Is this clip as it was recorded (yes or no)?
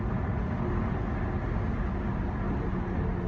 yes